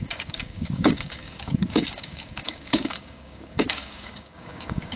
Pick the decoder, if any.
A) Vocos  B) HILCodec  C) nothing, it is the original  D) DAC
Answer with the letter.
D